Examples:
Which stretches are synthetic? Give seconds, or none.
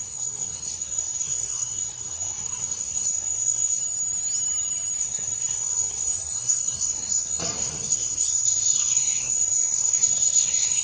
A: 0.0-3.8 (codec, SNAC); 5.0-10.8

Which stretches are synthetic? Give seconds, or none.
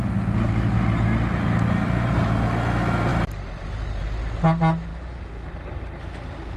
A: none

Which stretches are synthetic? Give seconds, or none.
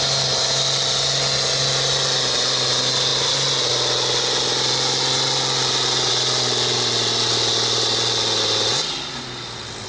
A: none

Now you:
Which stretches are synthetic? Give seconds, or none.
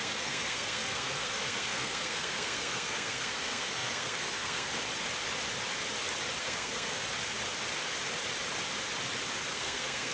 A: 0.0-4.7 (codec, SNAC); 6.4-7.0; 9.5-10.1